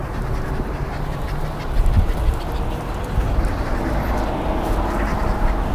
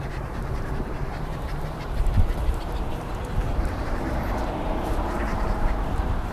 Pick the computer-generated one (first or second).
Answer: second